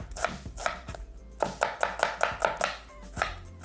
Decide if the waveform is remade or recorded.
recorded